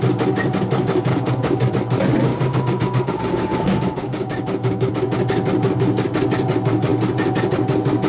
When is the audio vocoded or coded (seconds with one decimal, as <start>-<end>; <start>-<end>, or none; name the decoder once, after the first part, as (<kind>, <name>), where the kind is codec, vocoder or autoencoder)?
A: 1.1-1.7 (codec, DAC); 2.3-4.9